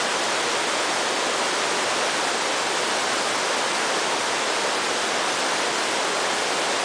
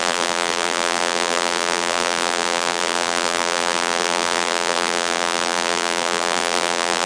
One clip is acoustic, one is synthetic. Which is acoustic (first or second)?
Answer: first